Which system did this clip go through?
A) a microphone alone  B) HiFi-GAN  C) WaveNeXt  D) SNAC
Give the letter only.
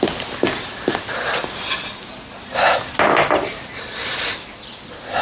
A